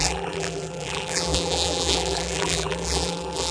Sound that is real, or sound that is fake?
fake